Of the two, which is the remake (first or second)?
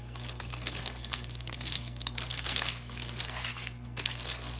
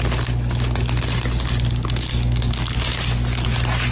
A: first